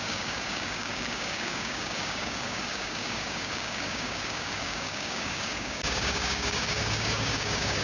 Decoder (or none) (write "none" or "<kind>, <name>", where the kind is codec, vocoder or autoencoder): codec, DAC